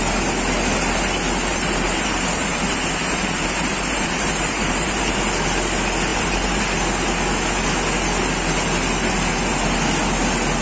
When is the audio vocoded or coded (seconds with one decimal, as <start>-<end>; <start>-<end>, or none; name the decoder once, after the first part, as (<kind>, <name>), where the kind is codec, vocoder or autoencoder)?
1.5-5.3 (vocoder, BigVGAN v2); 6.1-6.6